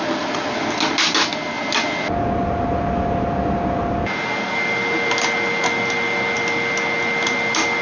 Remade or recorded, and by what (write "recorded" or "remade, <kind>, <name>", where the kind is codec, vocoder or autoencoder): recorded